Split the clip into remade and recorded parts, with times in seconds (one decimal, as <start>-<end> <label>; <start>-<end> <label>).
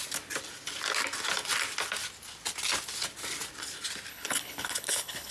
0.0-4.1 recorded; 4.1-5.3 remade